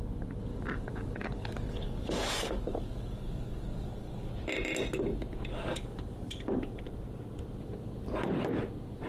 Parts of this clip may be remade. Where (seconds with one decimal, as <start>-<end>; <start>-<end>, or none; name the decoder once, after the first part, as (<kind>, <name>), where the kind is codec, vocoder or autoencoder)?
0.5-4.3 (codec, DAC); 5.5-6.8